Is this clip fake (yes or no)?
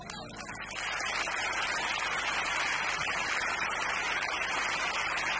no